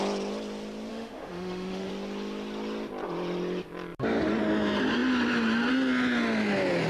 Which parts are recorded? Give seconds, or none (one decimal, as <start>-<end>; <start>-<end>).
0.0-0.9; 1.9-6.9